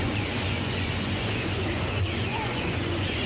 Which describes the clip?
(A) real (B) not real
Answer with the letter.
B